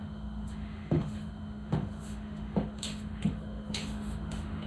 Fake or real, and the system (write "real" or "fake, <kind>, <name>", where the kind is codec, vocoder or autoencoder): fake, autoencoder, DAC-VAE